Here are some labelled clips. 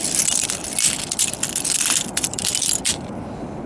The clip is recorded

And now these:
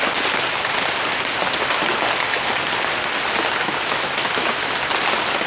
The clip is recorded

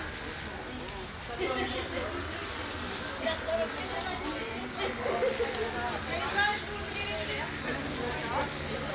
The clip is recorded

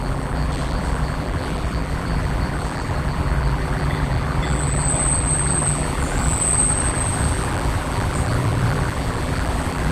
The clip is remade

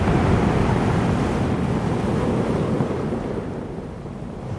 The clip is recorded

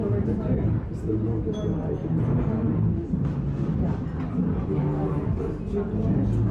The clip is recorded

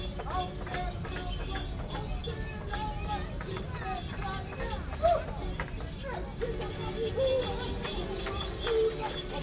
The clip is recorded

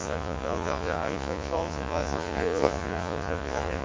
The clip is remade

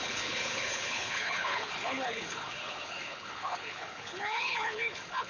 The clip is remade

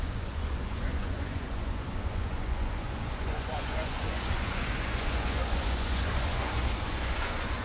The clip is remade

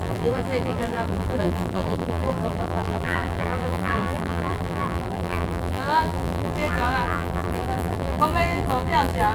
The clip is remade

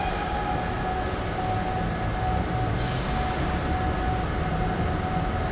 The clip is recorded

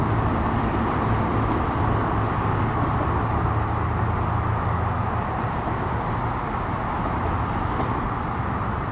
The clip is recorded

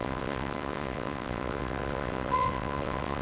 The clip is remade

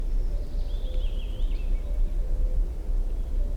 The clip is recorded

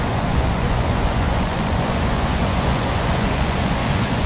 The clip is remade